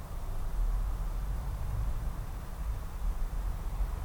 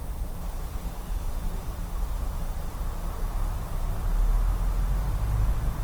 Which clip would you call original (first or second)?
second